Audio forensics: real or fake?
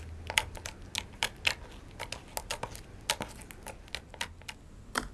real